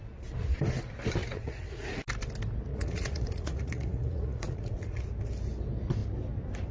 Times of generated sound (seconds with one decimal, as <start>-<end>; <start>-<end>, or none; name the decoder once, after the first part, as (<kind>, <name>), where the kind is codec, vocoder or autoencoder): 1.2-2.0 (vocoder, Vocos); 2.7-5.1